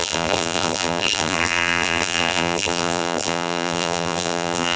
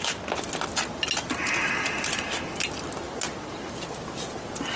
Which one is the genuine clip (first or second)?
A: second